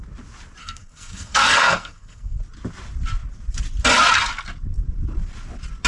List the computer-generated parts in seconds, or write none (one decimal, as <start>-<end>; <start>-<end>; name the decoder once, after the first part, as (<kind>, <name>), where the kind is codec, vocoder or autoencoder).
0.6-2.4 (codec, SNAC)